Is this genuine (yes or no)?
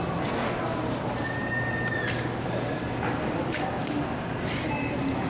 yes